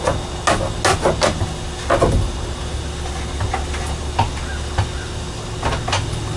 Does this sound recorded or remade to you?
recorded